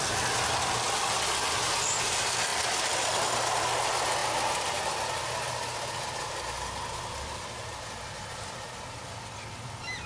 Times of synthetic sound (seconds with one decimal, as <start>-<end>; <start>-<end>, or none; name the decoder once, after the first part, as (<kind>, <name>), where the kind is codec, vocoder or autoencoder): none